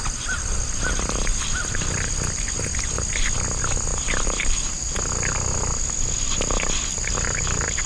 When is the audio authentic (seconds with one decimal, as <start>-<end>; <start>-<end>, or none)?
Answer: 0.0-3.9; 5.0-7.9